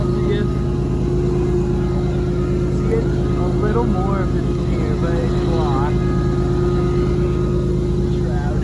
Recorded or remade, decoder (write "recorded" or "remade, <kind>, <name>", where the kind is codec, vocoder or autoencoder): recorded